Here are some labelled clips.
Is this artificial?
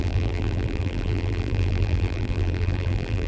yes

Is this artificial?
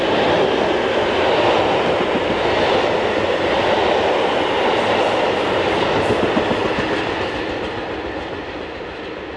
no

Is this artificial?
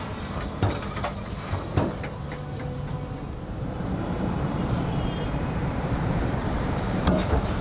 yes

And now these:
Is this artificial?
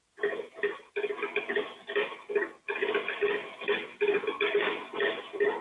no